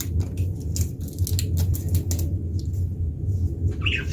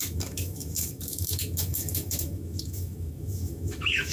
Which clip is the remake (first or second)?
second